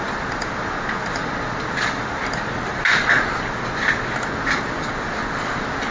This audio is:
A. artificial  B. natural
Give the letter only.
B